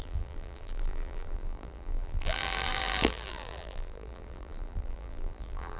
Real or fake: fake